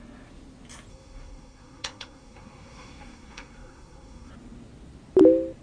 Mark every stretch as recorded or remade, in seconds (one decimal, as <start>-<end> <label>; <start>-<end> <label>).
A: 0.0-0.9 recorded; 0.9-4.3 remade; 4.3-5.6 recorded